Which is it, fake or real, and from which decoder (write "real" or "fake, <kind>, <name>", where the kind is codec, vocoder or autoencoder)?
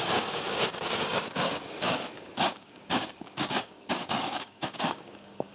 fake, codec, DAC